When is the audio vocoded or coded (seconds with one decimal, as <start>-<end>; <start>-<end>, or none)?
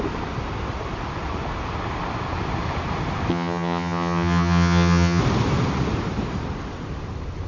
3.3-5.2